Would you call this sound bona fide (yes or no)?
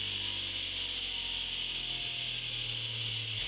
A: yes